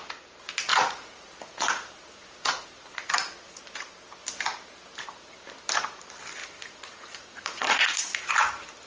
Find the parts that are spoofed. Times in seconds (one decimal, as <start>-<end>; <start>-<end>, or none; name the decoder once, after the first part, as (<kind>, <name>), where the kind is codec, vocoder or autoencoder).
0.7-3.6 (vocoder, Vocos); 6.4-8.3